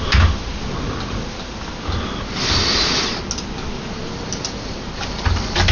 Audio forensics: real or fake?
real